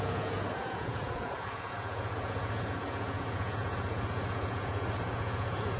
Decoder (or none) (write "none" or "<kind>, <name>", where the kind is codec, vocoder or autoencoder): vocoder, Vocos